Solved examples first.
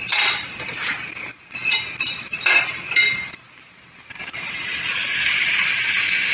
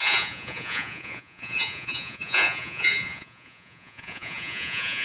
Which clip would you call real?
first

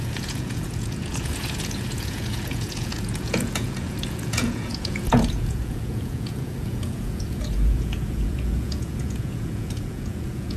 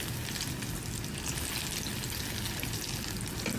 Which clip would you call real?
second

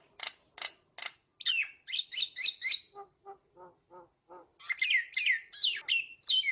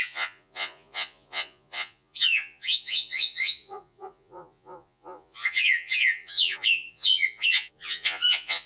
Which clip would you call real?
first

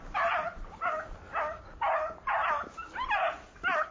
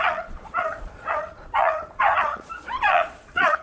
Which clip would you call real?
first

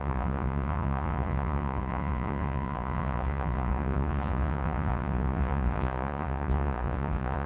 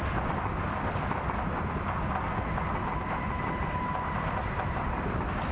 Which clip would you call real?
second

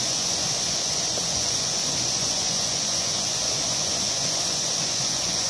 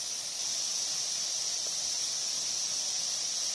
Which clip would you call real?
second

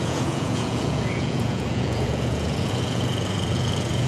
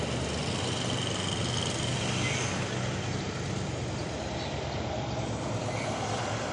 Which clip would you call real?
second